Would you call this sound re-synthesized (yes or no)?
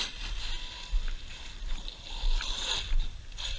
no